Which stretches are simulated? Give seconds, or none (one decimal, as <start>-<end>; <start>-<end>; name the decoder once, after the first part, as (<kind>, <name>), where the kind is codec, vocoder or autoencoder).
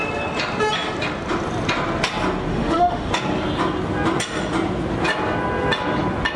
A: 2.5-3.1 (autoencoder, DAC-VAE)